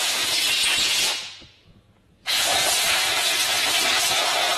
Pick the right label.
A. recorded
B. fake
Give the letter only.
B